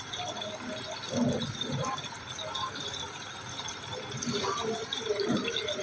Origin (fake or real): real